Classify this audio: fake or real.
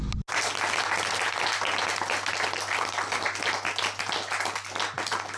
real